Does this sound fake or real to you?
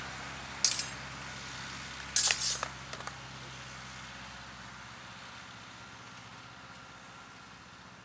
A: real